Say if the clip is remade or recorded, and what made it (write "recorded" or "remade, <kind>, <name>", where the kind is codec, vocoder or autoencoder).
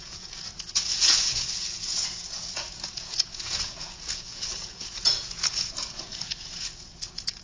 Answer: remade, vocoder, Vocos